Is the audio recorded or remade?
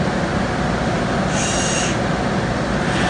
recorded